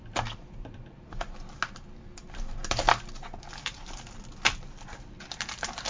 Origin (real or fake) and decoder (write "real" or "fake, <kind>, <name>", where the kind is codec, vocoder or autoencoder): real